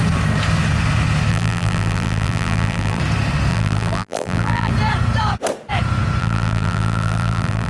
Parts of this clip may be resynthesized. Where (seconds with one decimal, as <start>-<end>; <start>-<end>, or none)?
1.3-3.0; 3.5-4.7; 6.2-7.7

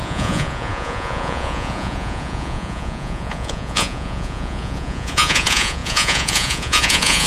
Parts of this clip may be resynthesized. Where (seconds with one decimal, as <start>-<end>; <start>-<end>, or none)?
0.0-7.3

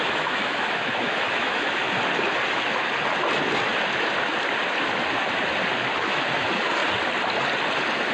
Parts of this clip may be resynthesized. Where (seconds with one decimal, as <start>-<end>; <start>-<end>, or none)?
0.0-1.8; 6.0-6.8

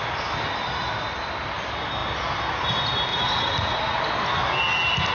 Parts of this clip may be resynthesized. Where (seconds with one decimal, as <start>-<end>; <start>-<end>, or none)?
3.1-4.0

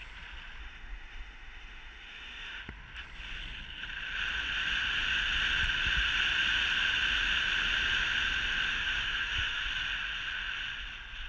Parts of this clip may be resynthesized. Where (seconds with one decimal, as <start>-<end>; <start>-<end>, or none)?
0.6-2.6; 8.7-9.6

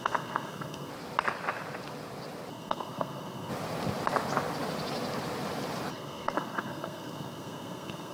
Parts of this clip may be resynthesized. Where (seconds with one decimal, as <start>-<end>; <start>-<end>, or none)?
0.0-0.9; 2.5-3.5; 5.9-8.1

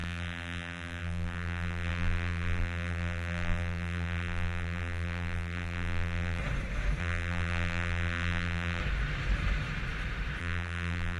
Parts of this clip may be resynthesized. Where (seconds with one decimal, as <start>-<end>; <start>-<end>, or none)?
0.0-6.4; 7.0-8.8; 10.4-11.2